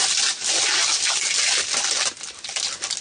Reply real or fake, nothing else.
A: real